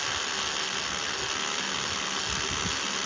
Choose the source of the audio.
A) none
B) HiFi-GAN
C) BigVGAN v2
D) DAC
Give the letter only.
A